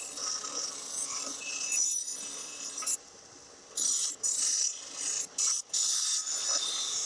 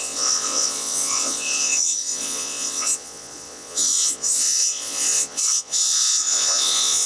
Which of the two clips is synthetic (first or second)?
second